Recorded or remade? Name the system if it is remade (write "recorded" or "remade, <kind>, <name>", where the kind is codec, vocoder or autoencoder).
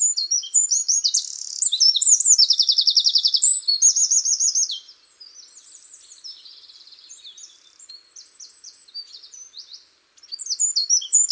remade, vocoder, BigVGAN v2